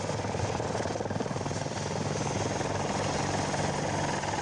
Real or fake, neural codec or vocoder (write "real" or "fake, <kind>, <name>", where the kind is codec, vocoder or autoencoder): real